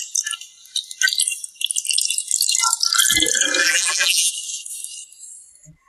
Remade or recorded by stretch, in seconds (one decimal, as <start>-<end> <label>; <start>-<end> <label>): 0.0-3.6 recorded; 3.6-4.3 remade; 4.3-5.9 recorded